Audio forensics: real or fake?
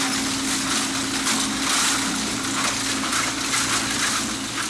real